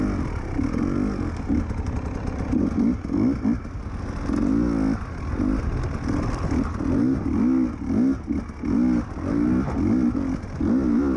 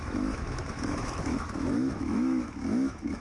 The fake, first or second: second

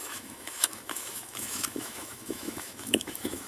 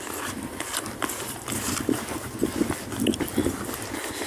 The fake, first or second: first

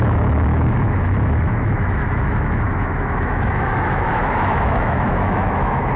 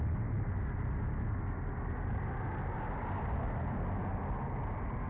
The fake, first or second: first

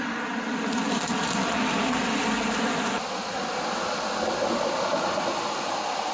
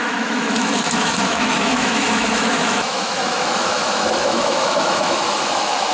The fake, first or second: second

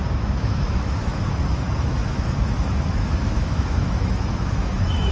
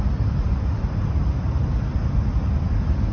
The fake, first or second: first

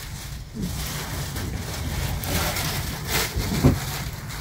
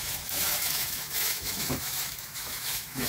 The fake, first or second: second